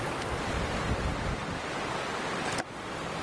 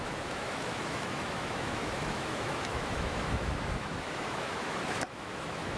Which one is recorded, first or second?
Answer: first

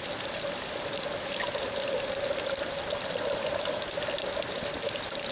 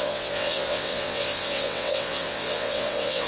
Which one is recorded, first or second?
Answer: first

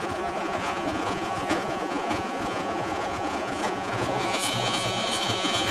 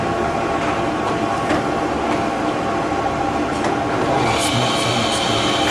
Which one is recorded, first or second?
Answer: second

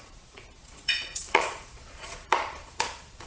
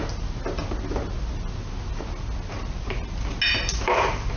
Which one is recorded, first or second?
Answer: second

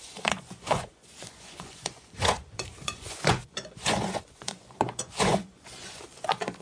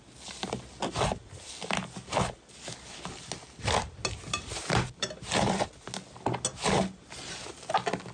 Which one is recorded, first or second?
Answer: second